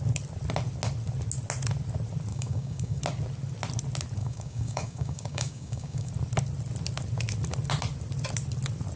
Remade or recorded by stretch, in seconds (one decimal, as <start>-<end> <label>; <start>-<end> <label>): 0.0-2.3 recorded; 2.3-3.0 remade; 3.0-4.2 recorded; 4.2-6.1 remade; 6.1-9.0 recorded